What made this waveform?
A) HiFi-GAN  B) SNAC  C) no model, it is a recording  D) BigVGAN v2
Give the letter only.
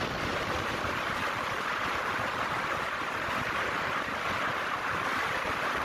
C